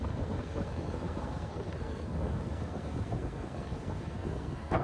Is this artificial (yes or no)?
yes